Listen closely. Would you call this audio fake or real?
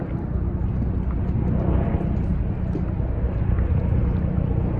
real